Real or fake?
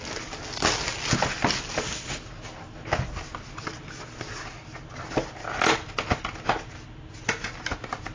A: real